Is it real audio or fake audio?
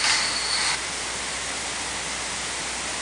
real